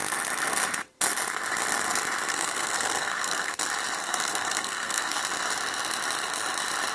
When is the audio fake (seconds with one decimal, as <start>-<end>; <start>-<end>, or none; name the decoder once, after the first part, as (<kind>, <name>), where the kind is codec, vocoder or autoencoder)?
2.3-3.5 (codec, SNAC); 4.0-5.2